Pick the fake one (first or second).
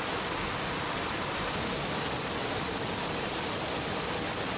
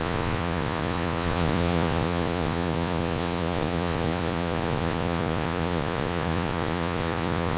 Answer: second